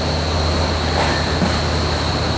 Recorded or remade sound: recorded